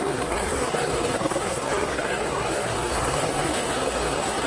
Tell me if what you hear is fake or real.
fake